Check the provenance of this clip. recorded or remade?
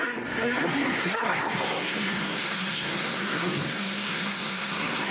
remade